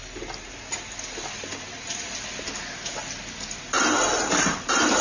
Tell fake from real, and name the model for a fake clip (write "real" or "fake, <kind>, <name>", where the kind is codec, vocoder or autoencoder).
real